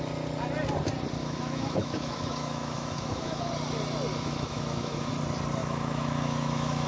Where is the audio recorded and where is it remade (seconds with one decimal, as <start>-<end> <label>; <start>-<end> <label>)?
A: 0.0-1.2 recorded; 1.2-3.5 remade; 3.5-4.1 recorded; 4.1-5.1 remade; 5.1-5.6 recorded; 5.6-6.9 remade